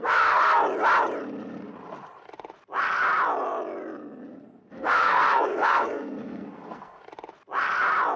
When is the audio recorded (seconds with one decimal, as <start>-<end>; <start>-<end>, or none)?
0.6-4.7; 7.0-8.2